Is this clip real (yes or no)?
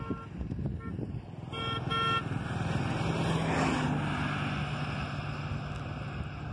yes